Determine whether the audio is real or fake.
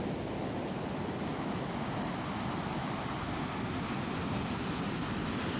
real